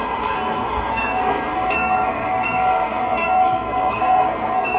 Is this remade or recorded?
remade